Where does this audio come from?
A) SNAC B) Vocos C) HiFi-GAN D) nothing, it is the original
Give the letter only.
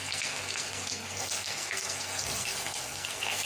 A